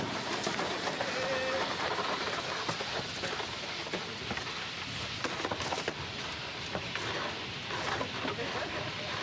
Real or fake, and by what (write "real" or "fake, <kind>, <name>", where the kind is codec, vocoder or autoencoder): real